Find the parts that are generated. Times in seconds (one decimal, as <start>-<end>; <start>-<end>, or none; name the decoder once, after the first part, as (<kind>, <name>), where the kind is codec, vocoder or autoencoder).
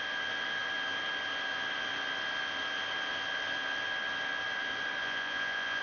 5.0-5.8 (vocoder, Vocos)